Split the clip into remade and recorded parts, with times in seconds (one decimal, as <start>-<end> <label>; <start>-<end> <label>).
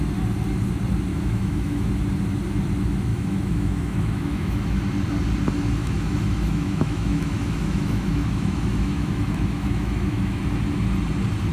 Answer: 0.0-1.1 recorded; 1.1-1.9 remade; 1.9-3.1 recorded; 3.1-4.8 remade; 4.8-5.8 recorded; 5.8-10.4 remade; 10.4-11.5 recorded